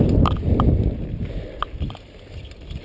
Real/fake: real